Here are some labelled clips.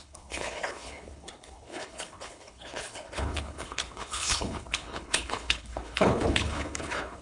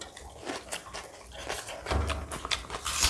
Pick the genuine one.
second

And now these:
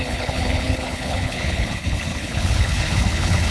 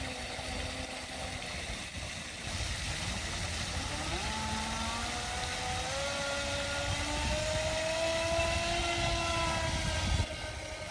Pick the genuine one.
second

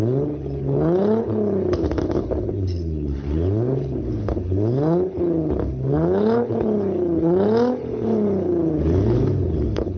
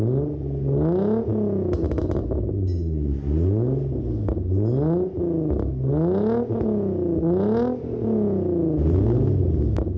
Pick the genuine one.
second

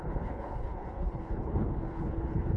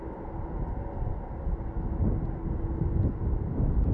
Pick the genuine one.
second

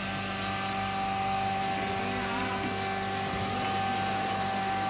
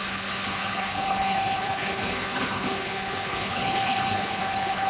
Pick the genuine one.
first